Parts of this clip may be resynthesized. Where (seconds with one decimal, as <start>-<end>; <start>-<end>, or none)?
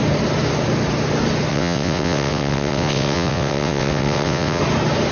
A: 1.5-4.6